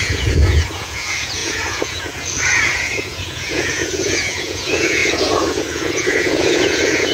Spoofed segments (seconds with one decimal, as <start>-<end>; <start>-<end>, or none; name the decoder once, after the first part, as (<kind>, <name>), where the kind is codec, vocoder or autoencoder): 0.0-7.1 (vocoder, Vocos)